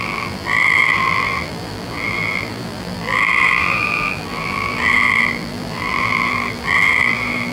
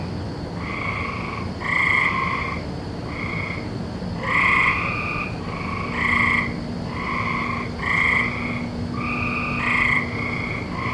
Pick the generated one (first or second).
first